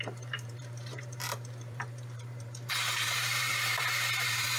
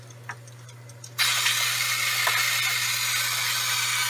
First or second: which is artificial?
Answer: first